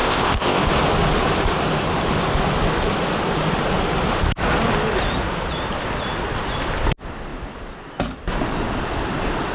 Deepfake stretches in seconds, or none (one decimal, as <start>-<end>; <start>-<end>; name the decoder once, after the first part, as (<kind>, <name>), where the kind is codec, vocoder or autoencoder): 0.0-0.6 (codec, ZipCodec)